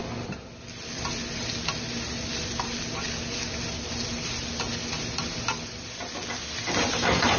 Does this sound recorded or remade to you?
recorded